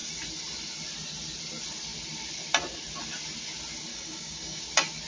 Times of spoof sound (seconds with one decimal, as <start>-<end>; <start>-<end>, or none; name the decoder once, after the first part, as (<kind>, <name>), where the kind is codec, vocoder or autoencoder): 3.9-4.6 (codec, DAC)